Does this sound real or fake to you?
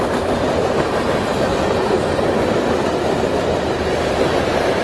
real